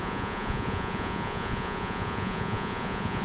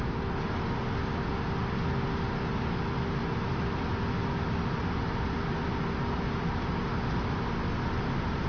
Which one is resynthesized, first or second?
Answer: first